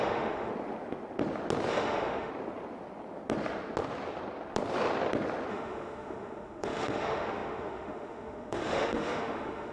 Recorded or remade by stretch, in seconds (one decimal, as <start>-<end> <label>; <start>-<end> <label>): 0.0-0.5 remade; 0.5-1.7 recorded; 1.7-2.3 remade; 2.3-5.5 recorded; 5.5-9.7 remade